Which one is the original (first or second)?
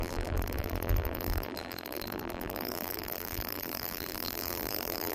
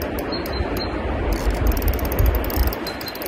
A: second